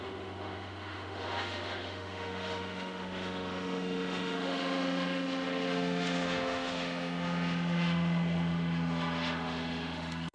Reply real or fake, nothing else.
fake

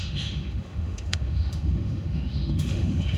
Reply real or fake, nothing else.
fake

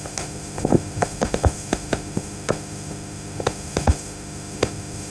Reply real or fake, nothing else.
fake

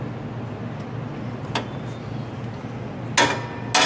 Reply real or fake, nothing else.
real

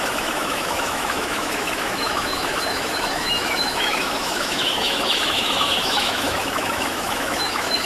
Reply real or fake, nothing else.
fake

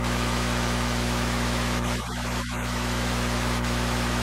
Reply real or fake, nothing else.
fake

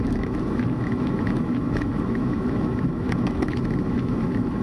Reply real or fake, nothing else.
fake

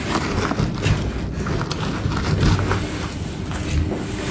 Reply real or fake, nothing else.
real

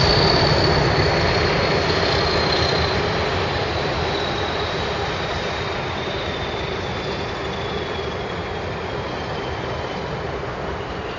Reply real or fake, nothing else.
real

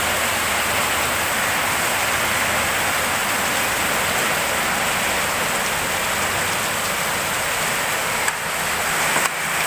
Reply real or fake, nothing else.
real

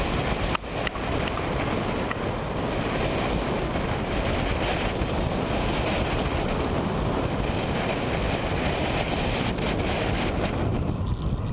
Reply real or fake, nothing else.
real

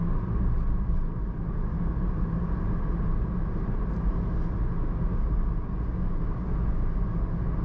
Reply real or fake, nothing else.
real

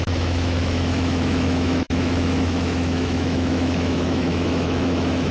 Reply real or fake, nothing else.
fake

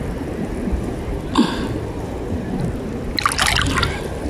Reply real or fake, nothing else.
real